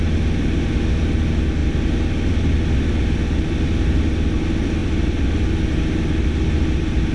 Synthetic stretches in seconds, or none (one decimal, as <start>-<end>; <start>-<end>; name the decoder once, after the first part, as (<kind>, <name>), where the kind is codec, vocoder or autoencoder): none